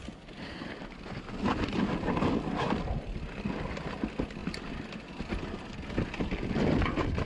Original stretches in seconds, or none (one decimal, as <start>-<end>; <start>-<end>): 0.0-7.3